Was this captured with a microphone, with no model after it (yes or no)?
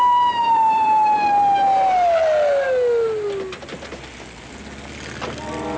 yes